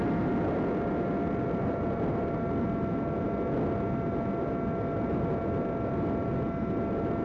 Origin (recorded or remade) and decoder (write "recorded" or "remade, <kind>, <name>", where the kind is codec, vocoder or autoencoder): recorded